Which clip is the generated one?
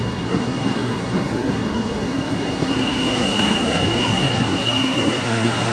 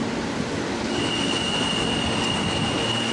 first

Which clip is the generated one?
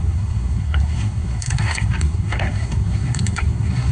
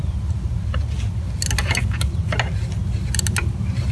first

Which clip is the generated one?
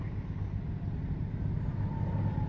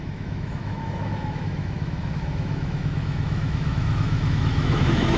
second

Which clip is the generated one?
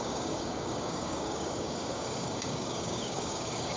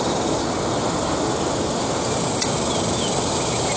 first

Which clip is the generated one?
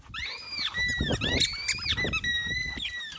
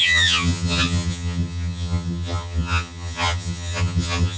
second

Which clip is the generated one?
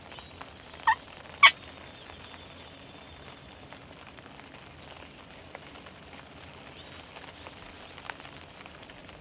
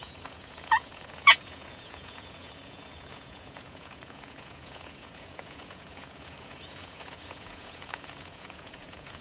second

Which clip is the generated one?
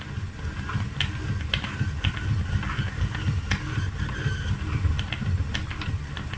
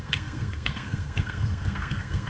second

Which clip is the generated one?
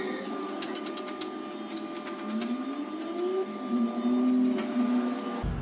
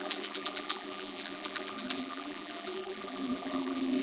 second